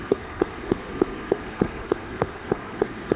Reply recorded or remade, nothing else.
remade